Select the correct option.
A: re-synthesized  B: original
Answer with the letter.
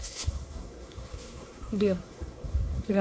A